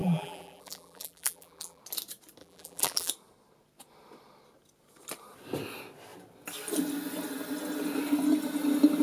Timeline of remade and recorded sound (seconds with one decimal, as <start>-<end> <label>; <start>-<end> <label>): 0.0-1.8 remade; 1.8-2.4 recorded; 2.4-3.1 remade; 3.1-9.0 recorded